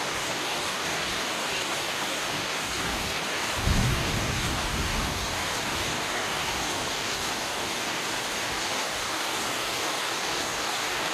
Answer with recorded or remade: remade